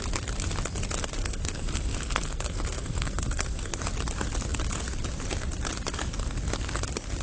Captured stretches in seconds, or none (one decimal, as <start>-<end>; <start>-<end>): 0.0-1.2; 3.8-7.2

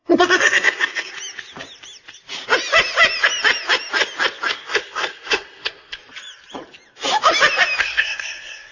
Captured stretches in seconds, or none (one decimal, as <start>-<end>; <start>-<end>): 1.1-4.5; 6.0-7.8

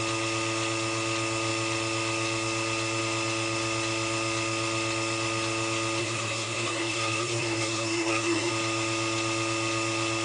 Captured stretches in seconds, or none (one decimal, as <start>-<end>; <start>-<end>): 0.0-6.0; 8.5-10.2

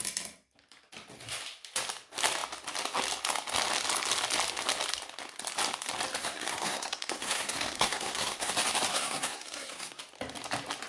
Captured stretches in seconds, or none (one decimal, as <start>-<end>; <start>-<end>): 0.0-6.2; 8.5-8.9; 10.0-10.9

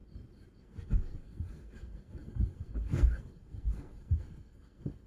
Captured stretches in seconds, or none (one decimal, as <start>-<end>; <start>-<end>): 0.0-0.6